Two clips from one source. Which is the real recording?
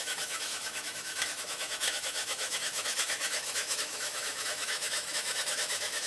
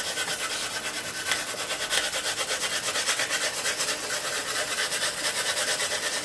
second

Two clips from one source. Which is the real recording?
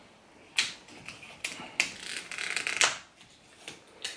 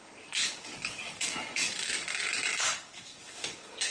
first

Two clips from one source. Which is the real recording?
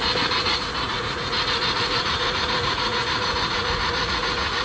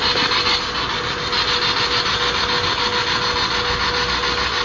second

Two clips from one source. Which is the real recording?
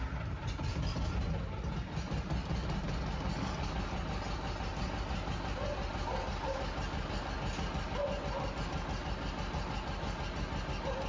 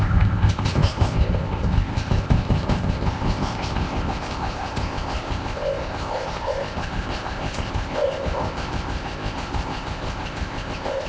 first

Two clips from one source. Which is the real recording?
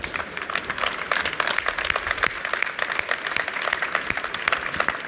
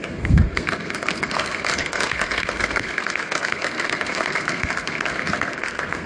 first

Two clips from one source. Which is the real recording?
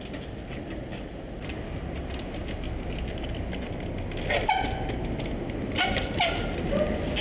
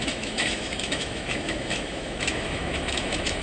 first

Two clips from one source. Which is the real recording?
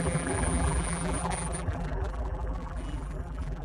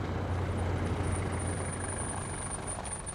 second